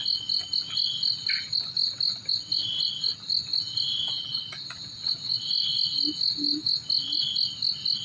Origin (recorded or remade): recorded